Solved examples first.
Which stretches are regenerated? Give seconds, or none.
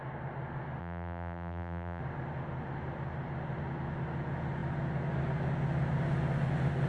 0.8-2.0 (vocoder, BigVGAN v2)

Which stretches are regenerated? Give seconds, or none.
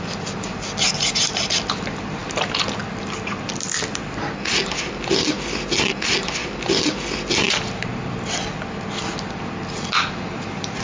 none